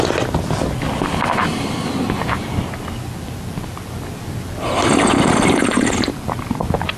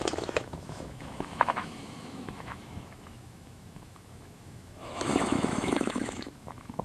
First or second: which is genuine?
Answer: first